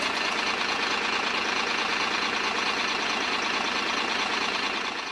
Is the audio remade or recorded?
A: remade